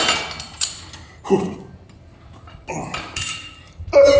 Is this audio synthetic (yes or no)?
no